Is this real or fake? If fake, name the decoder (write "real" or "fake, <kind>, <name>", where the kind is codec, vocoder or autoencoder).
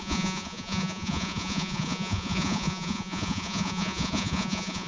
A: fake, vocoder, Vocos